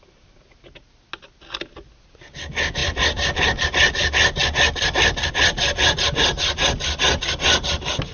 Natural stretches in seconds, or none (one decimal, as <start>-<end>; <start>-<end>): 0.0-8.1